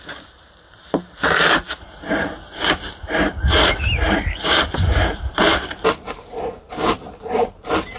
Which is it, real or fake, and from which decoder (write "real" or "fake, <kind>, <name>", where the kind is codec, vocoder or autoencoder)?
fake, vocoder, BigVGAN v2